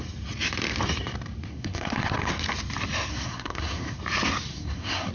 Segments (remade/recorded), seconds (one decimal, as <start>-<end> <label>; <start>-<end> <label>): 0.0-1.5 recorded; 1.5-2.3 remade; 2.3-3.1 recorded; 3.1-4.0 remade; 4.0-4.5 recorded; 4.5-5.1 remade